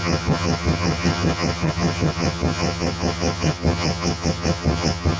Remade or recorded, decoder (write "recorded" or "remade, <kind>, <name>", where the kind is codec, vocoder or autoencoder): remade, vocoder, HiFi-GAN